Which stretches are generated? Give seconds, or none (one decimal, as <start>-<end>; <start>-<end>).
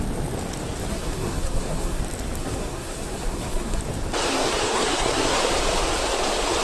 0.9-2.0; 2.4-3.8; 4.2-5.4